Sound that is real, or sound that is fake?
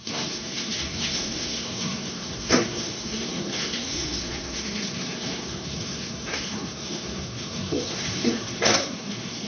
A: fake